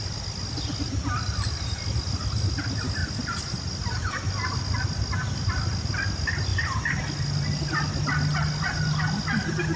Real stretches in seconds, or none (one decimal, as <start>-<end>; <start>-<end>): 0.0-9.8